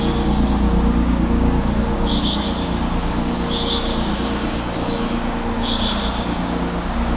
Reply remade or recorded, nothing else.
remade